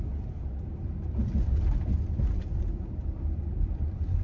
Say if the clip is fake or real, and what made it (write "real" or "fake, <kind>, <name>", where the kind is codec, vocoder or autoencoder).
real